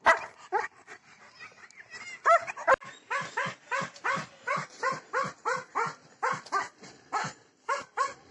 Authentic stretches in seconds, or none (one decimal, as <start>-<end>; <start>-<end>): 0.0-4.6; 5.7-8.3